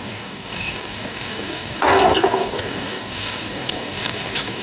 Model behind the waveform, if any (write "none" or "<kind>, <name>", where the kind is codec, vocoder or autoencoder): codec, DAC